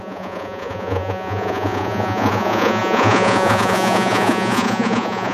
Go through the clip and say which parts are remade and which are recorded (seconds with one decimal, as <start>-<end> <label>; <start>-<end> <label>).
0.0-5.3 remade